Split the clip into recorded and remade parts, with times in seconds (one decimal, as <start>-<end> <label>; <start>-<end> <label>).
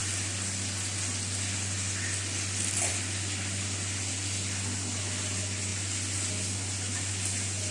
0.0-7.7 recorded